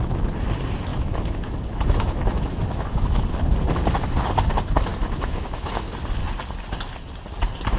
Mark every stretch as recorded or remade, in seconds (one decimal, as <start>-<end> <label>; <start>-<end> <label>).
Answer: 0.0-0.9 recorded; 0.9-3.3 remade; 3.3-4.9 recorded; 4.9-5.9 remade; 5.9-7.8 recorded